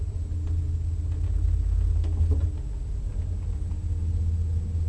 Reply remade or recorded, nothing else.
recorded